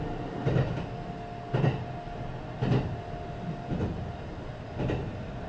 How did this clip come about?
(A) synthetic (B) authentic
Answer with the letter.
B